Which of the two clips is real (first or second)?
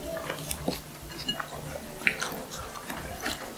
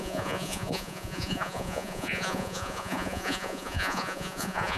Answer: first